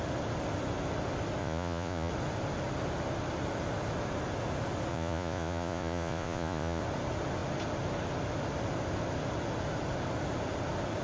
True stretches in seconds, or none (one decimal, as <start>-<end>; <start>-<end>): 0.0-1.4; 2.1-4.9; 6.8-11.0